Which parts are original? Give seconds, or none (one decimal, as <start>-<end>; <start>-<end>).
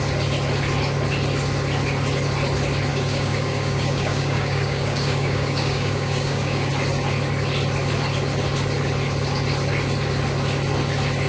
0.0-2.9; 6.7-11.3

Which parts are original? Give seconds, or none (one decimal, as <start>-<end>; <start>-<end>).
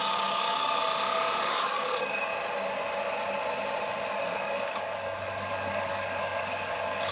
0.8-1.5; 2.3-4.1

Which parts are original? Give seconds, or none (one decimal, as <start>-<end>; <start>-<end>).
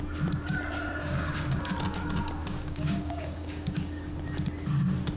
0.0-1.0; 1.7-2.4; 4.0-5.2